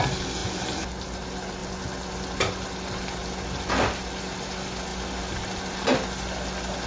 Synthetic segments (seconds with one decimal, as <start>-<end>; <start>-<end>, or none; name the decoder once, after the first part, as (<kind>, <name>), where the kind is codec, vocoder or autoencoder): none